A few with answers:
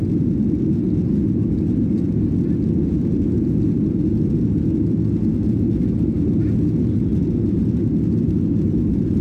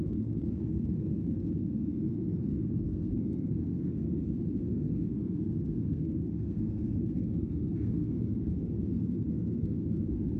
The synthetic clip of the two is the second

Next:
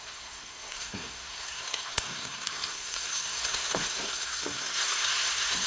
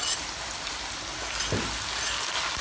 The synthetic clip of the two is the first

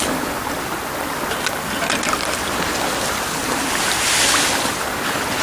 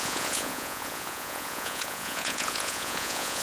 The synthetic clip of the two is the second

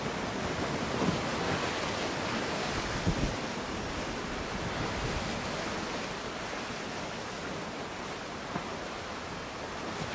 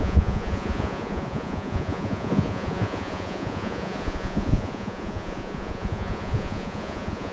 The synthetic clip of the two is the second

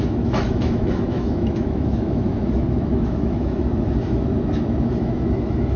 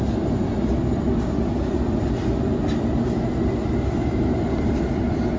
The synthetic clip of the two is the first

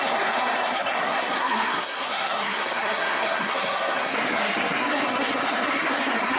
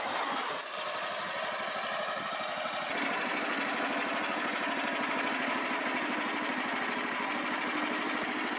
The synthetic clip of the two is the first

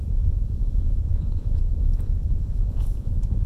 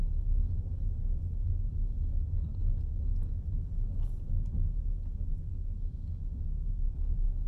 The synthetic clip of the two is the first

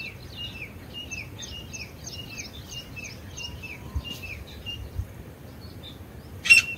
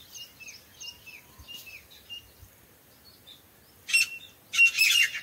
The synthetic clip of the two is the first